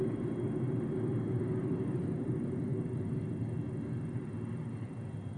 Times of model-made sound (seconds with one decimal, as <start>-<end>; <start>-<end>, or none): none